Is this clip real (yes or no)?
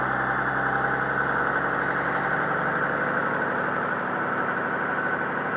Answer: yes